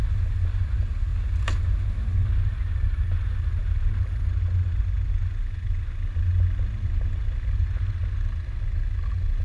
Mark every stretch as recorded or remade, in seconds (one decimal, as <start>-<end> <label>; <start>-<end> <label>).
0.0-9.4 recorded